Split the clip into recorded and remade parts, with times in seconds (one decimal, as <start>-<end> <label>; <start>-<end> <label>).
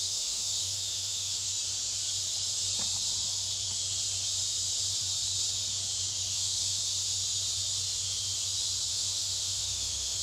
0.0-1.5 remade; 1.5-6.3 recorded; 6.3-6.8 remade; 6.8-8.9 recorded; 8.9-10.2 remade